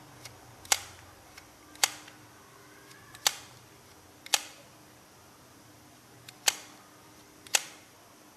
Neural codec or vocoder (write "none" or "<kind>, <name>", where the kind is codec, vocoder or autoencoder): vocoder, BigVGAN v2